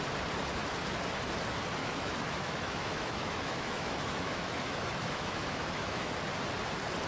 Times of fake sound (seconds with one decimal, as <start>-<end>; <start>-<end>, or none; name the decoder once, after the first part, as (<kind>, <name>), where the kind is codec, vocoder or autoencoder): 1.8-6.1 (autoencoder, DAC-VAE)